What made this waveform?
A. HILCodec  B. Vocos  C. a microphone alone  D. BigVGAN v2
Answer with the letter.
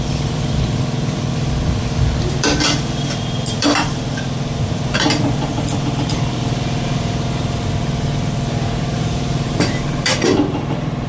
D